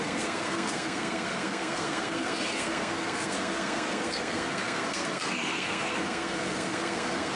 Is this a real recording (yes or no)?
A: no